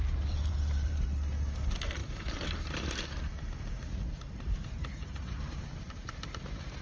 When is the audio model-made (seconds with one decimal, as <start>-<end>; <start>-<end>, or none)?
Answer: 0.0-1.1; 2.0-6.1